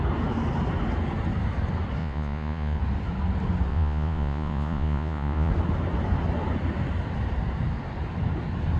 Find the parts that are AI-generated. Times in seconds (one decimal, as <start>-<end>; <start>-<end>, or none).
2.0-2.8; 3.7-5.5